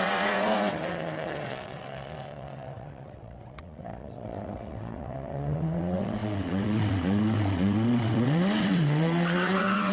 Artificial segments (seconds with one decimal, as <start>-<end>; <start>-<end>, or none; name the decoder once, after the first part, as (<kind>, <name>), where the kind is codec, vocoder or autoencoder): 0.0-9.9 (vocoder, WaveNeXt)